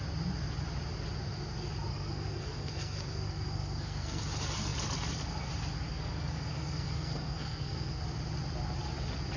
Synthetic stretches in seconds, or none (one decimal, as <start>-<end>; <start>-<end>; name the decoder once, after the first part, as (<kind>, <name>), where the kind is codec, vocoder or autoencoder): 1.9-4.2 (codec, SNAC); 5.9-8.0